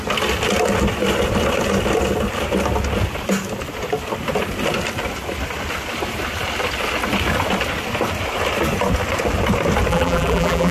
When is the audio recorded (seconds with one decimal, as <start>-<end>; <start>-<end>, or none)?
0.0-9.9

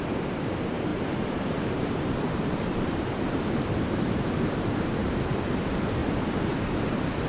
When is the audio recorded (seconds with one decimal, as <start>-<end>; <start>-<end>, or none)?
6.0-6.6

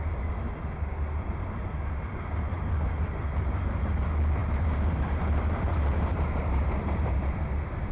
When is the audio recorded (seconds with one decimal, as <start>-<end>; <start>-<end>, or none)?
0.0-4.4; 7.1-7.9

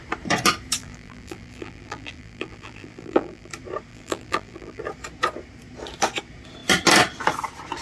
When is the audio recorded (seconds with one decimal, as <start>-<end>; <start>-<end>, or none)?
0.0-0.8; 3.5-3.9; 4.8-7.8